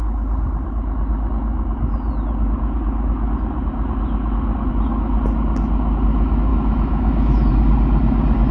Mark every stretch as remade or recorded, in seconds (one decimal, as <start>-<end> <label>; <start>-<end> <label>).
0.0-6.5 recorded; 6.5-7.5 remade; 7.5-8.5 recorded